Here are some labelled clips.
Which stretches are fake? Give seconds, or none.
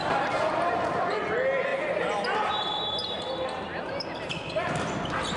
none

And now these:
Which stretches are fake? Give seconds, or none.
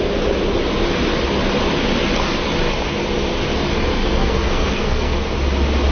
3.9-5.2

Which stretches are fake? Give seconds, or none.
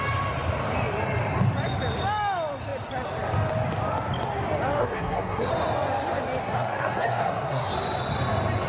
4.8-5.5; 6.4-7.7